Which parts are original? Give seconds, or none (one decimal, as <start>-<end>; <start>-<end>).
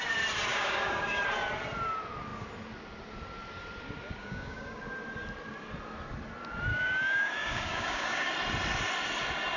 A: 0.0-0.5; 1.2-4.2; 4.8-6.7; 8.3-9.6